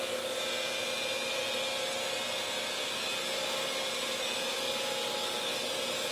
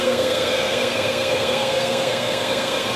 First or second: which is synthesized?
second